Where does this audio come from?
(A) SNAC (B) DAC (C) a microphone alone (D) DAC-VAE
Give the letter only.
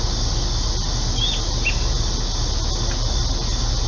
C